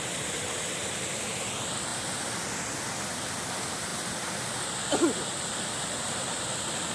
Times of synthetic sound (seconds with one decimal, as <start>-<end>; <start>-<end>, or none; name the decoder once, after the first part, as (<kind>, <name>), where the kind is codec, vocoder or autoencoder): none